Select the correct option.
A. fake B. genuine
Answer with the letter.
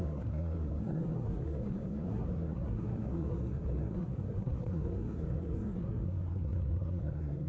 A